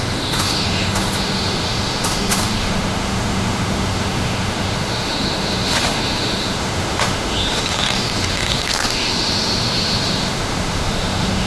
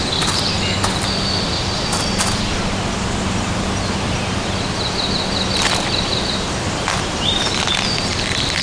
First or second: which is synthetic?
first